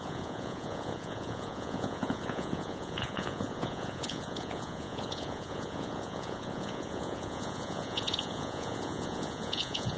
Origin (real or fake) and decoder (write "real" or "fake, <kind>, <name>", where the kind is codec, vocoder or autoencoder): fake, vocoder, Vocos